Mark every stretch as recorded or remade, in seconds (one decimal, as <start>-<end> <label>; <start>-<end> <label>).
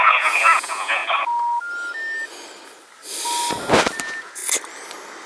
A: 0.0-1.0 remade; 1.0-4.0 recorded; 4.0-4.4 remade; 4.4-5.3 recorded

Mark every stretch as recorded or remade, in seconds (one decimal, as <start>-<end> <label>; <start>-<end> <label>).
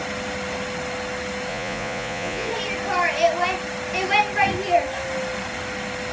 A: 0.0-1.5 recorded; 1.5-2.5 remade; 2.5-6.1 recorded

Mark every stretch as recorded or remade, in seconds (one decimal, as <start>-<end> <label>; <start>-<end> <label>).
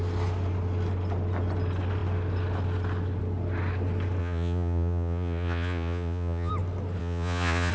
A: 0.0-4.2 recorded; 4.2-6.5 remade; 6.5-7.0 recorded; 7.0-7.7 remade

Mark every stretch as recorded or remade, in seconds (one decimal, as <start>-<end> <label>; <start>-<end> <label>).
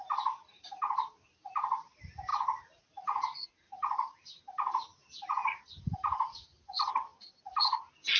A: 0.0-8.2 recorded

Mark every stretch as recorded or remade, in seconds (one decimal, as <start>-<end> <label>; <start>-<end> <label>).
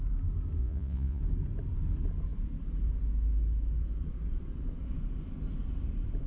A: 0.0-0.6 recorded; 0.6-1.2 remade; 1.2-6.3 recorded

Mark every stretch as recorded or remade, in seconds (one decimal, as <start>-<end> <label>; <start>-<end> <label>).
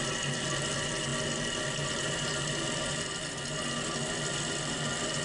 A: 0.0-5.2 recorded